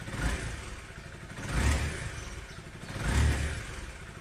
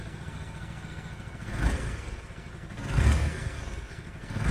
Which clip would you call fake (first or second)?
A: second